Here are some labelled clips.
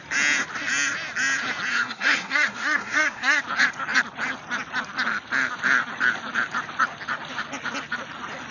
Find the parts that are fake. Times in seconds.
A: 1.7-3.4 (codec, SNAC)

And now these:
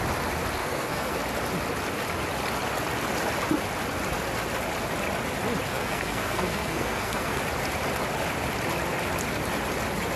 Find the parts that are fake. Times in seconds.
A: 0.6-1.2 (codec, SNAC); 5.7-7.4

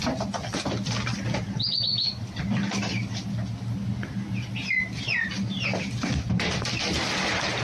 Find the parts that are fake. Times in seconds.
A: none

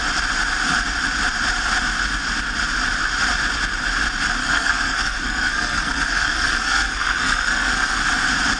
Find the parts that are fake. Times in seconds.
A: 4.4-8.0 (codec, SNAC)